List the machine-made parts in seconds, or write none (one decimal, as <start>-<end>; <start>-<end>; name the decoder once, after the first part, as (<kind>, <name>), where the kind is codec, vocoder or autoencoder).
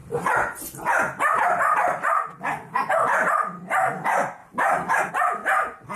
4.4-5.1 (vocoder, BigVGAN v2)